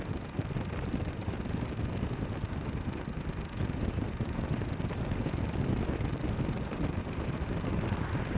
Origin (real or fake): fake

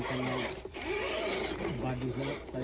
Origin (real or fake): real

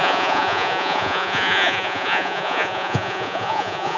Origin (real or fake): fake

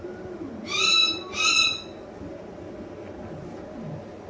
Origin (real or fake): real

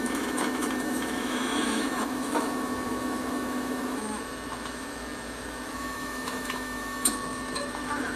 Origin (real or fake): fake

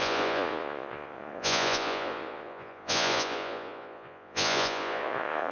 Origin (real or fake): fake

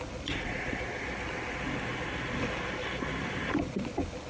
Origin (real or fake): real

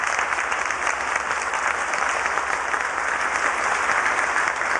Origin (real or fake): real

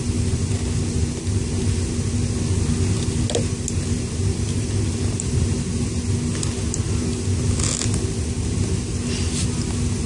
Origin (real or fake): real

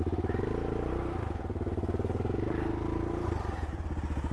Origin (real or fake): fake